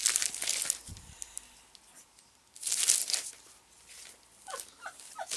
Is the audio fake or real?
real